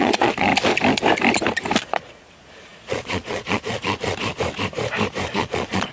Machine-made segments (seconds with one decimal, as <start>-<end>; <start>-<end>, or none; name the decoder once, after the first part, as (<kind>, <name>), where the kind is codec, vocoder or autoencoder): 0.0-0.5 (vocoder, Vocos); 1.8-4.3; 5.3-5.9